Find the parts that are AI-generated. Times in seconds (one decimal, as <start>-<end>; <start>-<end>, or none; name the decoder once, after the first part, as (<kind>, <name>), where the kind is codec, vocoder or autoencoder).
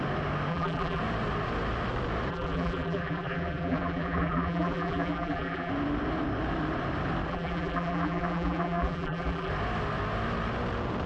0.5-1.0 (vocoder, BigVGAN v2); 2.3-5.7; 7.3-9.5